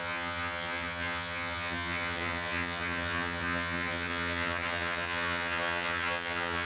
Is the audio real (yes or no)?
no